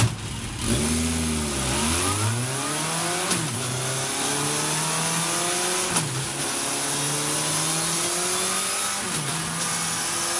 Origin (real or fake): real